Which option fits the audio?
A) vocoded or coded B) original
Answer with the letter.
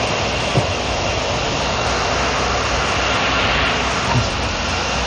B